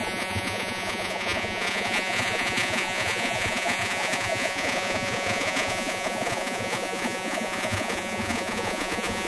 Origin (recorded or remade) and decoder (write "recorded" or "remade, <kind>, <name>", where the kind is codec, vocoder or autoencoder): remade, vocoder, Vocos